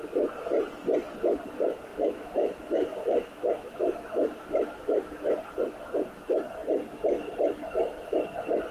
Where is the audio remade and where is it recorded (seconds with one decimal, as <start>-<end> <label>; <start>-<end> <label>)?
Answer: 0.0-1.9 recorded; 1.9-5.4 remade; 5.4-8.7 recorded

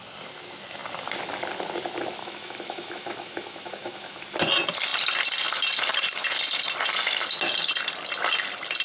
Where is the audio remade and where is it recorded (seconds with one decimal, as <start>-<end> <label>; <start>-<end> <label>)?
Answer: 0.0-2.2 recorded; 2.2-4.2 remade; 4.2-8.8 recorded

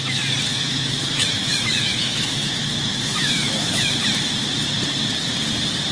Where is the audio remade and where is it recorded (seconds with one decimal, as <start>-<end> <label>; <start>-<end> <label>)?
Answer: 0.0-0.5 recorded; 0.5-4.0 remade; 4.0-5.9 recorded

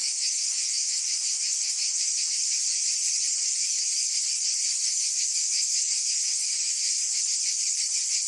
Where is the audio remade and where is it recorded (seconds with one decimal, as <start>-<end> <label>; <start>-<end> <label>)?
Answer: 0.0-2.3 remade; 2.3-3.4 recorded; 3.4-4.2 remade; 4.2-4.7 recorded; 4.7-7.2 remade; 7.2-8.3 recorded

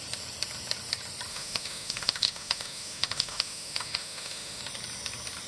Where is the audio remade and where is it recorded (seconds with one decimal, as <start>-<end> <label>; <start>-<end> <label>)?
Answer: 0.0-1.3 recorded; 1.3-4.6 remade; 4.6-5.5 recorded

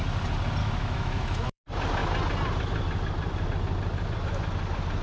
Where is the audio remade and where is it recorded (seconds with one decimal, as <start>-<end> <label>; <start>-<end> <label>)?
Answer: 0.0-0.6 recorded; 0.6-1.6 remade; 1.6-5.0 recorded